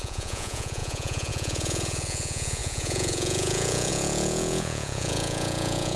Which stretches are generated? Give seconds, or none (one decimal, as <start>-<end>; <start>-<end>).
0.0-6.0